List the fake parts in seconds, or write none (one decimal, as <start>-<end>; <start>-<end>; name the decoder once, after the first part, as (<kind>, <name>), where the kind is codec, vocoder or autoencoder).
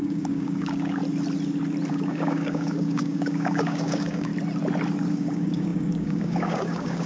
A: 0.0-1.0 (codec, DAC); 1.9-4.3; 5.1-7.1